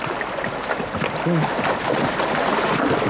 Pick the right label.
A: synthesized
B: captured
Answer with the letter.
B